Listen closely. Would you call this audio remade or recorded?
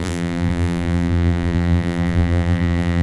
remade